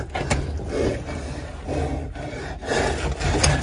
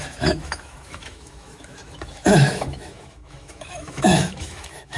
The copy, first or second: second